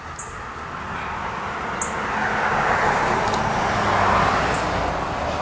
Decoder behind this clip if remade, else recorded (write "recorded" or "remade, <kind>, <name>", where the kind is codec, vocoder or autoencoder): recorded